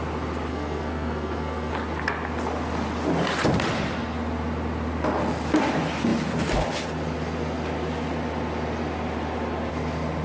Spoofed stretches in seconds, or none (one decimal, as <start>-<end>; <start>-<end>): 0.5-1.7